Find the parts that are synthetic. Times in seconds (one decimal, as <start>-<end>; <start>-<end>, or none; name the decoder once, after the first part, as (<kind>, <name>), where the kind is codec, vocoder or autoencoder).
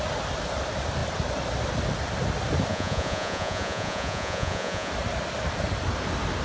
2.7-4.9 (vocoder, Vocos)